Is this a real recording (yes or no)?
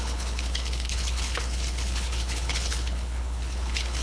no